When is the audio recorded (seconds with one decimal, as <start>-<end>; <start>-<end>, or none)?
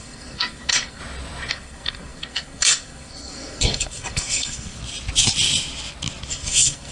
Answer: 1.0-1.5; 4.8-6.3